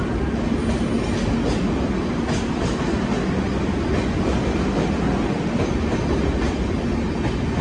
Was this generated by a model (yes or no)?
no